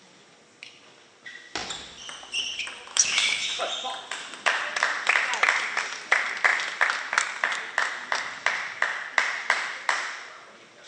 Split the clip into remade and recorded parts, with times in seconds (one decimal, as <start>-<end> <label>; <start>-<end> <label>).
0.0-2.9 recorded; 2.9-3.6 remade; 3.6-10.9 recorded